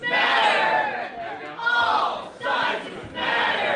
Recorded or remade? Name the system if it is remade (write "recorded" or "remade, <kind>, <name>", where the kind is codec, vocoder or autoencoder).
recorded